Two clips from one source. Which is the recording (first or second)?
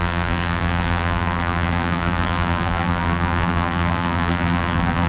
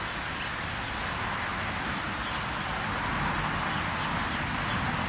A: second